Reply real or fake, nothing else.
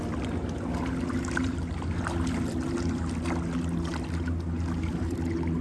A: real